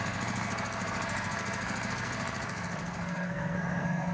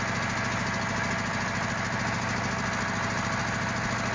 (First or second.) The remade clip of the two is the first